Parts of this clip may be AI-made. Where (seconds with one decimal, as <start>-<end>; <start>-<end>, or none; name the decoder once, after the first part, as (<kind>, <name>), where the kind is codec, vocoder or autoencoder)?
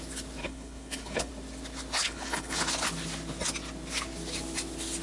0.4-1.3 (codec, HILCodec); 2.0-2.6